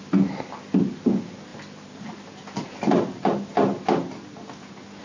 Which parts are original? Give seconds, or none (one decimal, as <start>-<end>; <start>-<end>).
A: 0.0-5.0